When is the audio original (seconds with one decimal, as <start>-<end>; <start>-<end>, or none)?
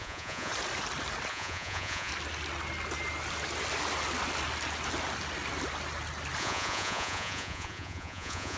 0.5-1.3; 2.1-6.4